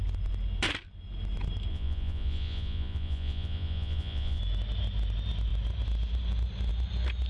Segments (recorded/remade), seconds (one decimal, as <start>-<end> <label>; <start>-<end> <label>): 0.0-1.7 recorded; 1.7-4.4 remade; 4.4-7.3 recorded